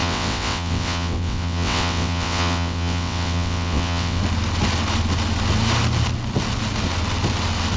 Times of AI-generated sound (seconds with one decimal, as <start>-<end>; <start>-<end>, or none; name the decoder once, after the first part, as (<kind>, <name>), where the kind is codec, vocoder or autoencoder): 0.0-4.2 (vocoder, WaveNeXt)